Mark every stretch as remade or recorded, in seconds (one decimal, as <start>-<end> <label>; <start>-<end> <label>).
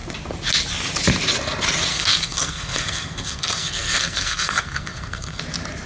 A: 0.0-1.9 recorded; 1.9-5.4 remade; 5.4-5.9 recorded